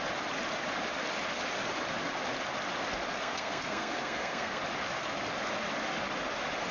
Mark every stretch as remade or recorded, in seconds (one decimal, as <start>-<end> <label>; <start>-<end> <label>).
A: 0.0-3.2 recorded; 3.2-4.6 remade; 4.6-6.7 recorded